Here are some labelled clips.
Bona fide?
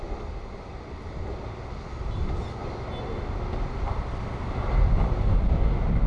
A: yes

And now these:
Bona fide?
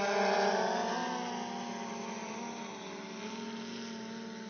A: yes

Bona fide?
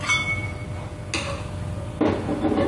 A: yes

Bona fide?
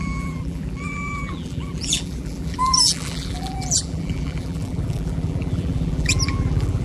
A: no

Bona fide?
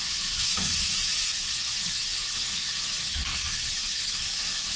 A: no